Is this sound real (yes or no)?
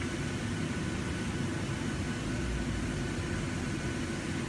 yes